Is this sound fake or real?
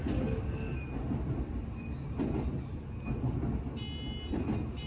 real